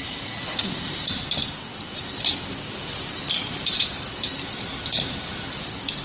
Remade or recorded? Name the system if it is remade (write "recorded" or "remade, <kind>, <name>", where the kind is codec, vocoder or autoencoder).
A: remade, vocoder, BigVGAN v2